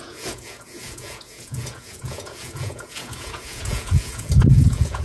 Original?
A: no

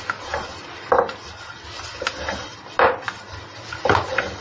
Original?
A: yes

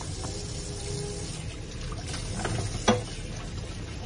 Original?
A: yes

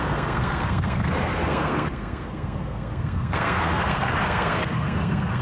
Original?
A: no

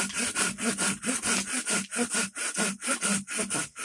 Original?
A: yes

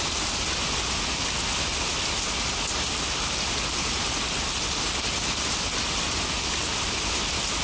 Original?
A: yes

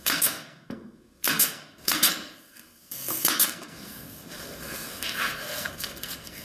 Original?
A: no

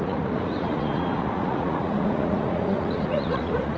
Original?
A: no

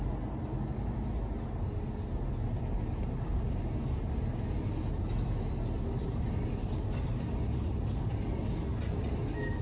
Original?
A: yes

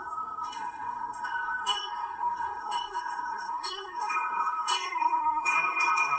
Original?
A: no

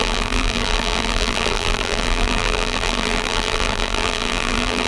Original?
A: no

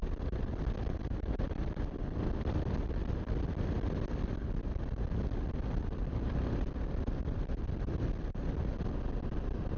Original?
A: yes